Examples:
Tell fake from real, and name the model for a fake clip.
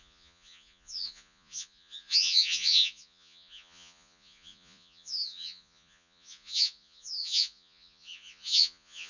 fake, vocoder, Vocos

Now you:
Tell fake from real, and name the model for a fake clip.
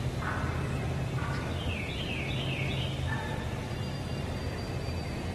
real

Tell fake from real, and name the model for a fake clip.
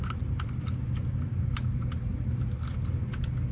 real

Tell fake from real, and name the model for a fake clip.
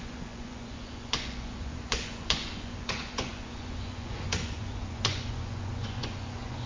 fake, vocoder, Vocos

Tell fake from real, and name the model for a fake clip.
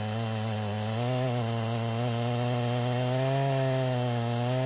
real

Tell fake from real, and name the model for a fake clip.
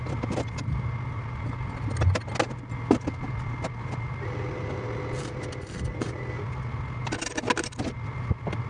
real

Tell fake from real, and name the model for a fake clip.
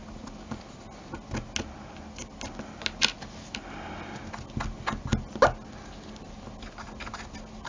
real